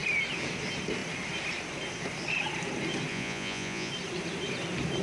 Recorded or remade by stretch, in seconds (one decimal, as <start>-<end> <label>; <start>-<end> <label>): 0.0-3.1 recorded; 3.1-3.9 remade; 3.9-5.0 recorded